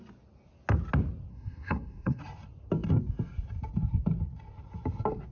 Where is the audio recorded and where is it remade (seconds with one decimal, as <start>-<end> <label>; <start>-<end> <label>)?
0.0-1.3 recorded; 1.3-2.2 remade; 2.2-5.3 recorded